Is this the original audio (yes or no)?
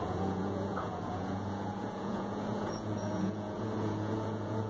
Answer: no